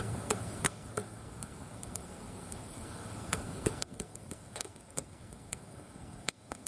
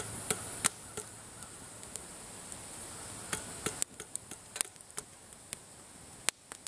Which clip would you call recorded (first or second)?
second